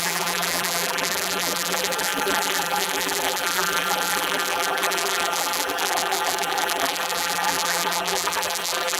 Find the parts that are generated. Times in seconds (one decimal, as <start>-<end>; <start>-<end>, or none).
0.0-9.0